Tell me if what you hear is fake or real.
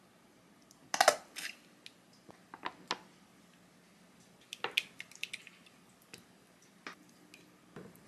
real